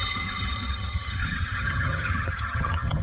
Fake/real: fake